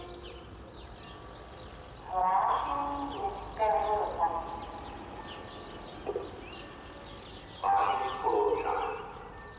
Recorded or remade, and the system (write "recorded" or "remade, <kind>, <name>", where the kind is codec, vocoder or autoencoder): recorded